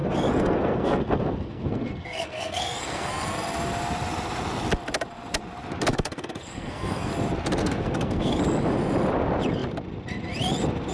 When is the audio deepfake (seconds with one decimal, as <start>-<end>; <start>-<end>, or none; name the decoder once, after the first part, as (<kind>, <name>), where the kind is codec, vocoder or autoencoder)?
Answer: 0.0-3.1 (codec, SNAC); 5.9-7.1; 7.6-8.4